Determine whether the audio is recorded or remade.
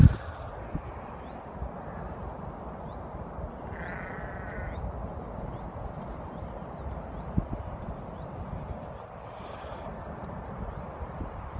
recorded